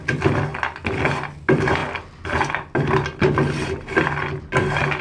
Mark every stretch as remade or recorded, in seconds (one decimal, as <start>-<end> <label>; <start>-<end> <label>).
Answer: 0.0-5.0 recorded